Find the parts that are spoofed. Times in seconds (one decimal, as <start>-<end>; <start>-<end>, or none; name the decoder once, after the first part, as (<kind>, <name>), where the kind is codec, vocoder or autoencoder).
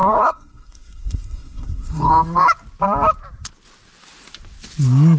0.0-2.1 (codec, SNAC)